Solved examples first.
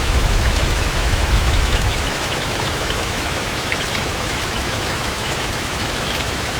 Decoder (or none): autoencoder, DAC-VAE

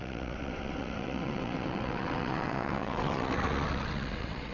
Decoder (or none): vocoder, WaveNeXt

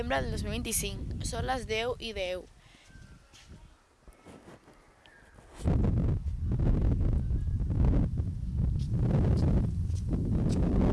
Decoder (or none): none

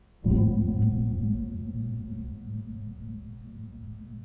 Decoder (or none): vocoder, WaveNeXt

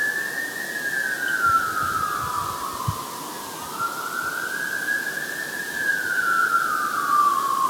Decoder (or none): none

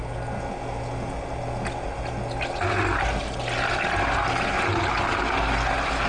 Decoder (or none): none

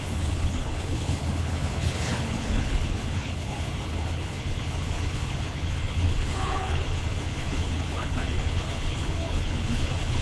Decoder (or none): codec, HILCodec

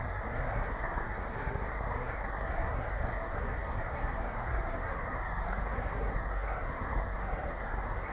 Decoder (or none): codec, SNAC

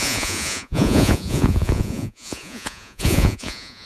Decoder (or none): vocoder, Vocos